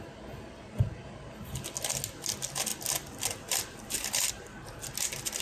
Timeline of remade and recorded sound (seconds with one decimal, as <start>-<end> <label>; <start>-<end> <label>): 0.0-5.4 recorded